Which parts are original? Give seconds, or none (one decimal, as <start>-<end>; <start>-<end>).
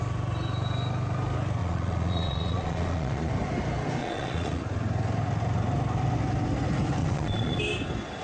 0.0-1.6; 3.3-4.0; 4.6-7.0; 7.6-8.2